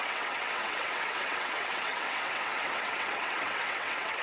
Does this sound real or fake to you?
fake